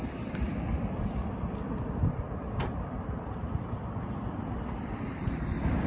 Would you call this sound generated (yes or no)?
yes